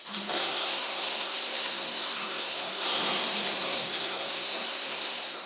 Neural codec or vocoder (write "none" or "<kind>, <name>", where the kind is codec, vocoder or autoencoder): codec, SNAC